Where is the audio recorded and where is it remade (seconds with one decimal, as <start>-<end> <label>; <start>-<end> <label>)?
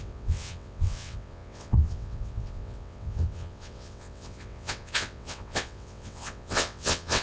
0.0-7.2 remade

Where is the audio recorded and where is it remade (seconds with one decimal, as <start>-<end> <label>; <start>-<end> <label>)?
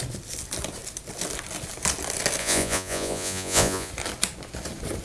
0.0-2.4 recorded; 2.4-3.9 remade; 3.9-5.0 recorded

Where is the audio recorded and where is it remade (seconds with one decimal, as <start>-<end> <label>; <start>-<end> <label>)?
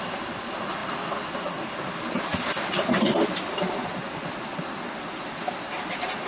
0.0-6.3 recorded